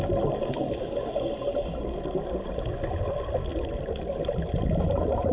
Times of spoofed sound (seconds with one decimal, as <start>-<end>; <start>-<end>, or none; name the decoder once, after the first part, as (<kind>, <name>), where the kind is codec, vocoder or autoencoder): none